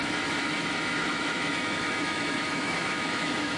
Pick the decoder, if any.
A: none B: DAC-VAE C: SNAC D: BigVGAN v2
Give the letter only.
B